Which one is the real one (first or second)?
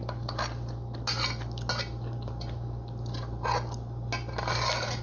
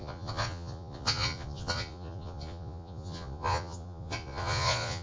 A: first